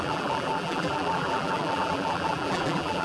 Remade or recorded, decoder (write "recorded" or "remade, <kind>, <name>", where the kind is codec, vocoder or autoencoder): remade, vocoder, BigVGAN v2